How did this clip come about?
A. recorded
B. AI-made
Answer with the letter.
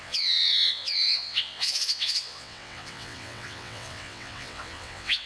B